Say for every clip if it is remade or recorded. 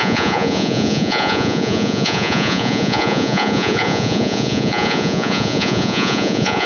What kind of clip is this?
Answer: remade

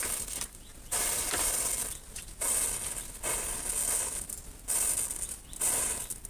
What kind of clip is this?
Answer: recorded